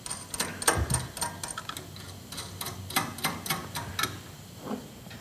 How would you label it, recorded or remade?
recorded